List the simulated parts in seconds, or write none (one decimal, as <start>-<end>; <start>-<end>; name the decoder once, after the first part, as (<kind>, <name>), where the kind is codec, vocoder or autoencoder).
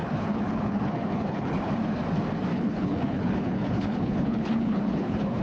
0.0-1.7 (codec, HILCodec); 2.5-5.4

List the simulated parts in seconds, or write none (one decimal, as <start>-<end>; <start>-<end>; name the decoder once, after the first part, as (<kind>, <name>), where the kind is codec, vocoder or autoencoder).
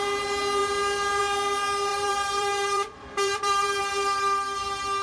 1.9-3.8 (vocoder, BigVGAN v2)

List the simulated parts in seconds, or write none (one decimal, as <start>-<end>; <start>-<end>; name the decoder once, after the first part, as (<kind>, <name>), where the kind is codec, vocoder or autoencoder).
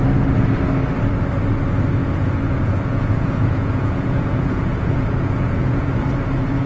2.0-6.0 (vocoder, Vocos)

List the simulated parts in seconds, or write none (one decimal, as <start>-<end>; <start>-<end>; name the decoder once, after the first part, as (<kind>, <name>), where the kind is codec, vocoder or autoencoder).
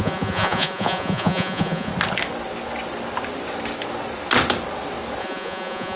0.0-1.9 (vocoder, Vocos); 5.2-6.0